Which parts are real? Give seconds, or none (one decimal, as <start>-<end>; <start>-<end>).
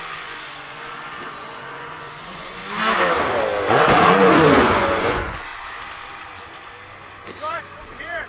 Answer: 2.6-3.7; 5.5-7.5